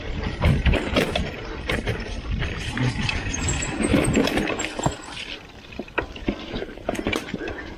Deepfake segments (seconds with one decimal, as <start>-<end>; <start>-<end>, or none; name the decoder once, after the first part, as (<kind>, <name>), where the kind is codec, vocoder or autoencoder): 0.0-3.9 (vocoder, BigVGAN v2); 6.0-7.8